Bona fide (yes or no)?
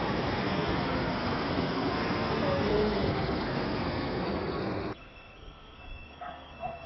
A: no